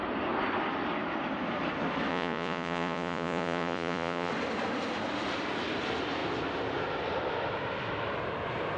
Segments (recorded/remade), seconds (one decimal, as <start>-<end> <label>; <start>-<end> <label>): 0.0-2.1 recorded; 2.1-4.3 remade; 4.3-8.8 recorded